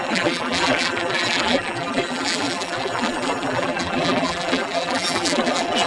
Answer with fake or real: fake